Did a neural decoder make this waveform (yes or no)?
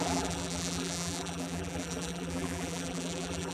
yes